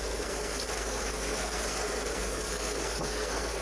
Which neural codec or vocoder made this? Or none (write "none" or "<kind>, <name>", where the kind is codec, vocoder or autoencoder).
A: codec, SNAC